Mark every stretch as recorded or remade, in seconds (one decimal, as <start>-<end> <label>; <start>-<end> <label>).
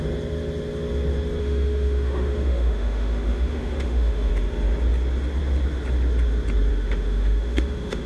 0.0-1.4 recorded; 1.4-4.3 remade; 4.3-6.7 recorded; 6.7-8.1 remade